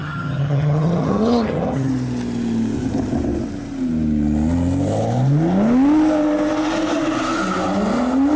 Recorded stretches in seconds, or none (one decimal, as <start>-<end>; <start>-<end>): 1.9-8.4